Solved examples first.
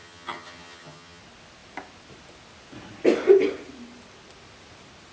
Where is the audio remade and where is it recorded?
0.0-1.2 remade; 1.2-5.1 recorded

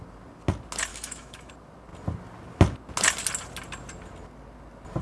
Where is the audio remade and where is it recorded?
0.0-0.9 recorded; 0.9-1.5 remade; 1.5-5.0 recorded

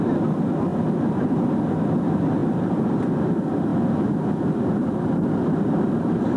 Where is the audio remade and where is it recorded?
0.0-2.4 recorded; 2.4-3.0 remade; 3.0-6.4 recorded

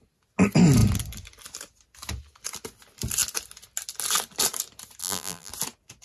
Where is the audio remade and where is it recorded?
0.0-5.0 recorded; 5.0-5.5 remade; 5.5-6.0 recorded

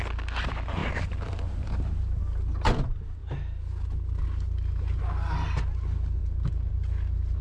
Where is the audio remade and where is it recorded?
0.0-0.8 recorded; 0.8-2.2 remade; 2.2-7.4 recorded